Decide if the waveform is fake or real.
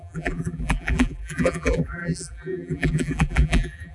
fake